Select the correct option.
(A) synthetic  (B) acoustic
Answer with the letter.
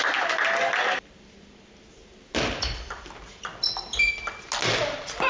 B